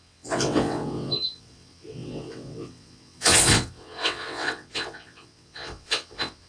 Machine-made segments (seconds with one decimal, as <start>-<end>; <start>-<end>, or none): 0.0-6.5